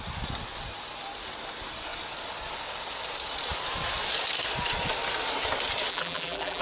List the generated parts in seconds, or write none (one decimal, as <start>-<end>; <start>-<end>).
5.9-6.6